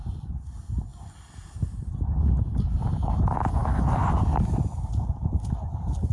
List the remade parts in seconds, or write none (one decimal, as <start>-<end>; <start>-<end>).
none